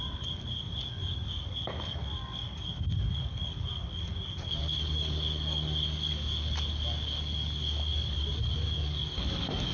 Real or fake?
fake